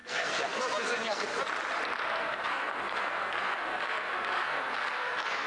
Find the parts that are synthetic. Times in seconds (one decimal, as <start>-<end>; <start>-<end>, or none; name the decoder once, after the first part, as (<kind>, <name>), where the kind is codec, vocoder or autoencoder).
0.0-1.4 (codec, SNAC); 2.2-5.5